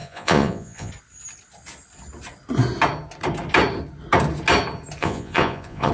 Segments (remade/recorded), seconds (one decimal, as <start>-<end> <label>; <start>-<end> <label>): 0.0-0.9 remade; 0.9-5.0 recorded; 5.0-5.9 remade

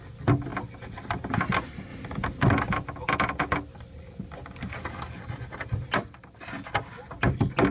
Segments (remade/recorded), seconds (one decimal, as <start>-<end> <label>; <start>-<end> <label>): 0.0-7.7 recorded

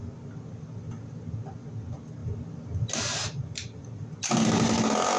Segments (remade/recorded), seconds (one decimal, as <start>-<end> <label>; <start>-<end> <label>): 0.0-5.2 recorded

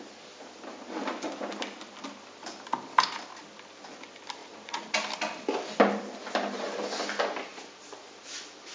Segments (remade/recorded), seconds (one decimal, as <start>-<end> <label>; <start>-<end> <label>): 0.0-4.4 recorded; 4.4-4.9 remade; 4.9-8.7 recorded

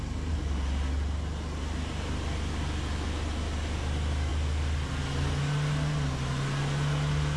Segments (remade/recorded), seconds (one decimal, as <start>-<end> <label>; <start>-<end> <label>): 0.0-7.4 recorded

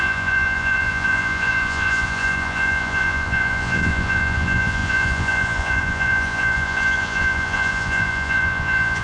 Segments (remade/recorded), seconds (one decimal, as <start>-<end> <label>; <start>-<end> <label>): 0.0-9.0 remade